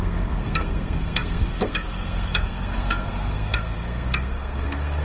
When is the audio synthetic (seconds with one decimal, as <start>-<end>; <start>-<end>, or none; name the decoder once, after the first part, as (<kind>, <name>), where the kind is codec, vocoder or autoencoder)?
0.0-5.0 (codec, SNAC)